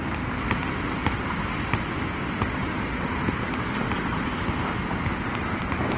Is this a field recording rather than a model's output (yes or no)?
yes